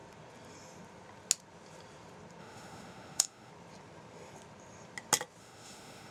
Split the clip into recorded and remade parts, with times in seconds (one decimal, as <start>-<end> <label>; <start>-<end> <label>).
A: 0.0-2.4 recorded; 2.4-3.5 remade; 3.5-5.4 recorded; 5.4-6.1 remade